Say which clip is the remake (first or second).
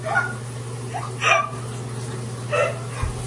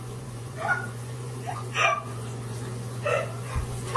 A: second